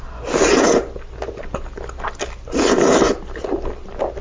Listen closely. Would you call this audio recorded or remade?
recorded